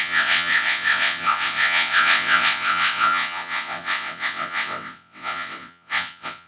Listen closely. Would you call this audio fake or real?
fake